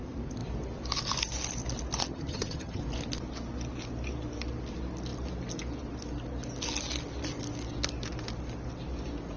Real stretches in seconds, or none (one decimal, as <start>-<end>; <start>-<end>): 0.0-2.1; 2.8-9.4